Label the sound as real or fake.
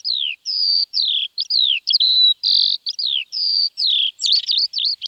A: fake